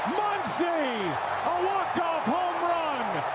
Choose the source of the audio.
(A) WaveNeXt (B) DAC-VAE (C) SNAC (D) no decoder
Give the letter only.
D